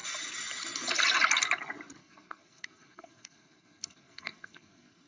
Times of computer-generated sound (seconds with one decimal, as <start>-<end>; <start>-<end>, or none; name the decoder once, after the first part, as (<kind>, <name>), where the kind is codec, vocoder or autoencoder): 2.0-5.1 (codec, SNAC)